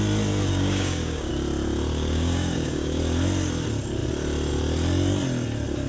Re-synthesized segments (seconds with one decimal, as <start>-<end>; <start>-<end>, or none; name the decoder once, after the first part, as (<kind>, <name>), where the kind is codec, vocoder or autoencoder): 0.5-1.3 (codec, DAC); 1.9-3.0